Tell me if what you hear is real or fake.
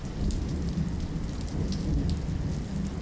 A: real